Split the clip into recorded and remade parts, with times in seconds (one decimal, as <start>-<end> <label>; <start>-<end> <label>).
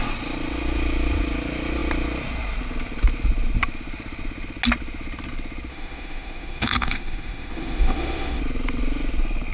0.0-5.7 recorded; 5.7-8.4 remade; 8.4-9.5 recorded